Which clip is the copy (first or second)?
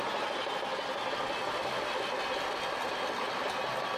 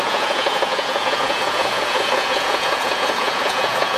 second